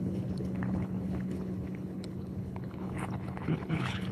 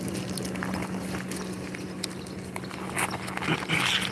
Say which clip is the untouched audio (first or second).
second